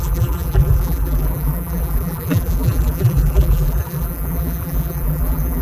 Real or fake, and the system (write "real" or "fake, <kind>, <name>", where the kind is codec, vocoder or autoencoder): fake, vocoder, BigVGAN v2